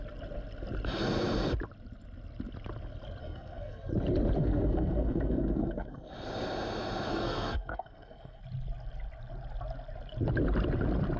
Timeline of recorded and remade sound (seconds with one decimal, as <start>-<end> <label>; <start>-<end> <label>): 0.0-3.2 recorded; 3.2-3.9 remade; 3.9-4.4 recorded; 4.4-6.1 remade; 6.1-7.1 recorded; 7.1-8.4 remade; 8.4-11.2 recorded